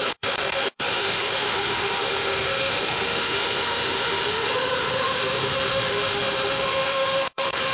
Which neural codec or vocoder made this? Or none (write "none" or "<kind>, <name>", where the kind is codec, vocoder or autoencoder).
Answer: autoencoder, DAC-VAE